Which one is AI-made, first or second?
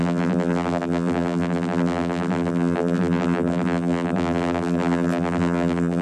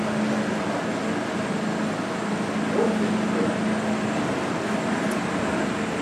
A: first